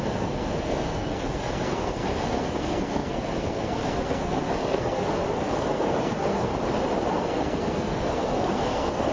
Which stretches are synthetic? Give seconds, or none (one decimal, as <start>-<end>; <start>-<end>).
0.0-6.5; 7.1-9.1